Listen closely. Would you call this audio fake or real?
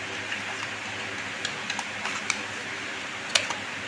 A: real